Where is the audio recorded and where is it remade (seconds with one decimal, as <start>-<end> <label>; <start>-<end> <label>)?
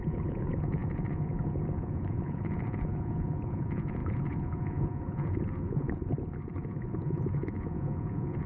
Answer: 0.0-8.5 remade